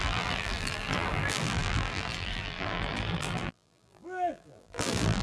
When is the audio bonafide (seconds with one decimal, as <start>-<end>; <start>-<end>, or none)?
none